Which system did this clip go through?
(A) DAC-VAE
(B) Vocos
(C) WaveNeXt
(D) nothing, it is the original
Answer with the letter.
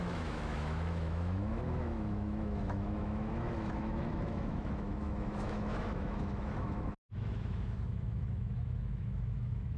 A